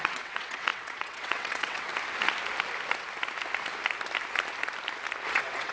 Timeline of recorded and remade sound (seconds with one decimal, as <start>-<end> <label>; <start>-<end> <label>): 0.0-1.9 remade; 1.9-5.3 recorded; 5.3-5.7 remade